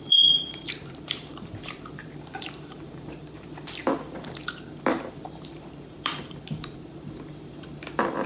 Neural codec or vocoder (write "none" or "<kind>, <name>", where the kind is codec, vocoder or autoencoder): vocoder, BigVGAN v2